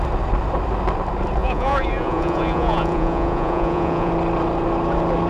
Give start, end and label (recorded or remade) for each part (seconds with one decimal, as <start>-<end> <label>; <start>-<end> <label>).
0.0-1.4 recorded; 1.4-4.1 remade; 4.1-5.3 recorded